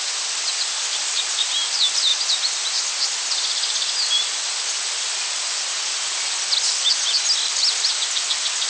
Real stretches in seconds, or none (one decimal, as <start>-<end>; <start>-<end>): 0.0-8.7